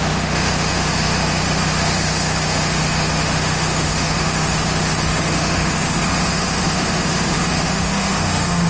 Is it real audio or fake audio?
fake